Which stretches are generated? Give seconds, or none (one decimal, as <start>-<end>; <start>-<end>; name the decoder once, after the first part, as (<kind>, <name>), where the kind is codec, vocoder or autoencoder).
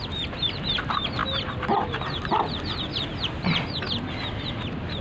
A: none